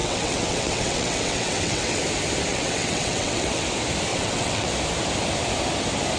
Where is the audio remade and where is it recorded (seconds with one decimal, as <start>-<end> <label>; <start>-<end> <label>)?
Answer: 0.0-2.0 remade; 2.0-2.5 recorded; 2.5-3.6 remade; 3.6-4.1 recorded; 4.1-4.7 remade; 4.7-6.2 recorded